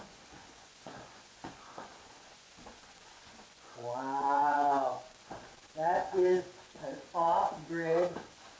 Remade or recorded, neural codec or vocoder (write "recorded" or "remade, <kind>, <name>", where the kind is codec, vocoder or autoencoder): remade, vocoder, Vocos